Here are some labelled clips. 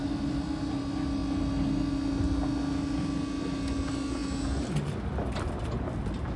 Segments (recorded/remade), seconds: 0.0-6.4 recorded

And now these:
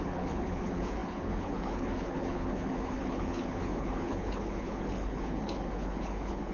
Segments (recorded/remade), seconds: 0.0-6.5 remade

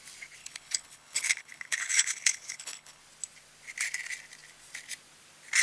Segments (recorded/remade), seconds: 0.0-0.4 recorded; 0.4-3.0 remade; 3.0-5.6 recorded

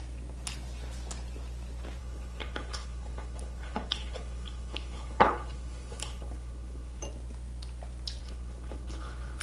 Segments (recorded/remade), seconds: 0.0-2.0 recorded; 2.0-7.0 remade; 7.0-8.2 recorded; 8.2-9.4 remade

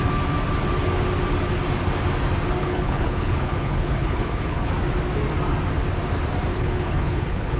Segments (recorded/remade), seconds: 0.0-2.6 recorded; 2.6-4.7 remade; 4.7-6.5 recorded; 6.5-7.6 remade

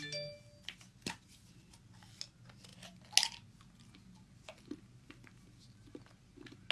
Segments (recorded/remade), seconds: 0.0-6.7 recorded

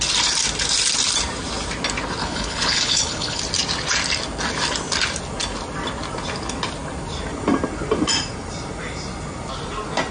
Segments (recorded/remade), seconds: 0.0-2.2 recorded; 2.2-3.4 remade; 3.4-10.1 recorded